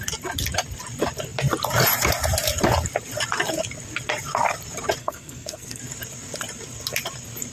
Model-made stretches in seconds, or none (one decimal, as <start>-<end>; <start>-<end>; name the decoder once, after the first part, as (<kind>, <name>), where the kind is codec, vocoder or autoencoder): 5.0-5.8 (codec, SNAC)